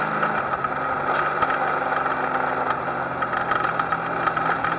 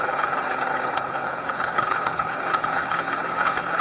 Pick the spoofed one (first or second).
second